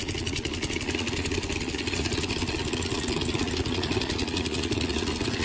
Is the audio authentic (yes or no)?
no